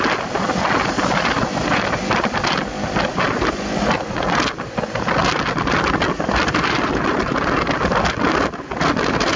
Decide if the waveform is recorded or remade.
recorded